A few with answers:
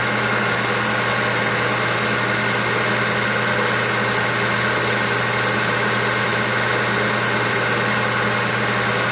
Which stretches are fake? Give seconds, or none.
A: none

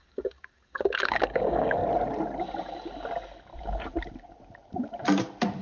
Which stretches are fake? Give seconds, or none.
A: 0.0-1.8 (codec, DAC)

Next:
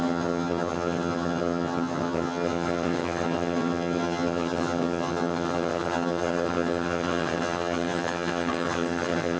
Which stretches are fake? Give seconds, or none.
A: 0.0-9.4 (vocoder, HiFi-GAN)

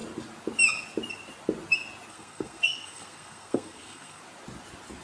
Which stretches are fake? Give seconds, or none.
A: 2.1-4.2 (codec, SNAC)